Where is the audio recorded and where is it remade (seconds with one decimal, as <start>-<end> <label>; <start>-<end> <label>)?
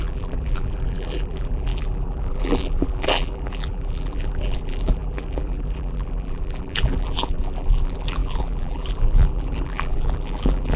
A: 0.0-10.8 remade